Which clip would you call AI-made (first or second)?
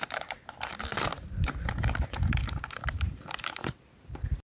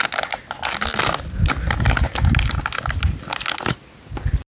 first